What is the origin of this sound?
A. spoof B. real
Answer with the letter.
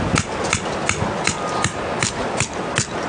B